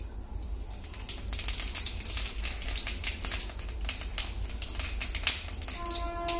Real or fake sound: real